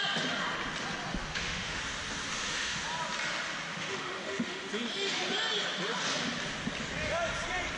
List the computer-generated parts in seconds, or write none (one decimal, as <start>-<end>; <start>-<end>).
1.1-1.8; 2.3-2.8; 3.7-4.7